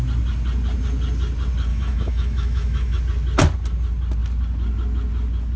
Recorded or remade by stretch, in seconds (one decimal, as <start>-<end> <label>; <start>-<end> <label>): 0.0-1.7 recorded; 1.7-3.0 remade; 3.0-5.6 recorded